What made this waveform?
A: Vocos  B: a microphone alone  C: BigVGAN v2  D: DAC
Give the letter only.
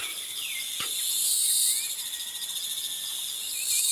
B